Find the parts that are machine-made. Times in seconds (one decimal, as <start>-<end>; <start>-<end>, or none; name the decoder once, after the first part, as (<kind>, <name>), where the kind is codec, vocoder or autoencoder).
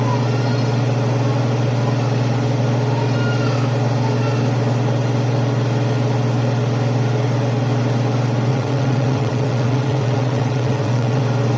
8.5-11.2 (vocoder, WaveNeXt)